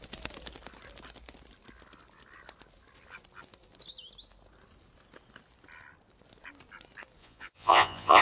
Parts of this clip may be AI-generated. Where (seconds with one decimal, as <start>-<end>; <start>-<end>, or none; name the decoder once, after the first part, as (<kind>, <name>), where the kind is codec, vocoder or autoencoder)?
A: 7.2-8.2 (vocoder, Vocos)